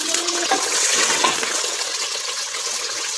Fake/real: fake